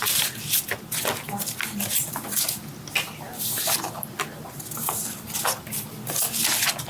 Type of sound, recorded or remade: recorded